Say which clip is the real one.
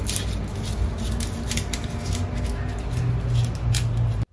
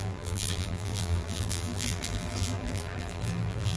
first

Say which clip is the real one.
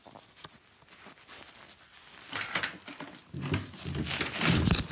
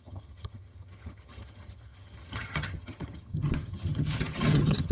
first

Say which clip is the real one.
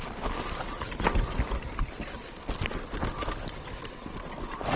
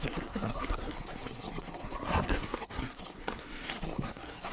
first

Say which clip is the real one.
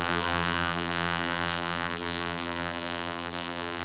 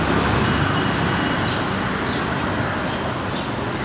second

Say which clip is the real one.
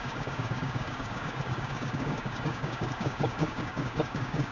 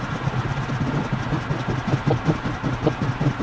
second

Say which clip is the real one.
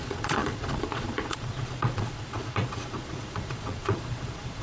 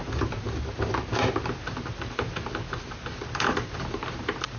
second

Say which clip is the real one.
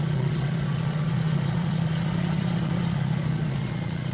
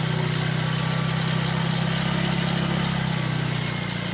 second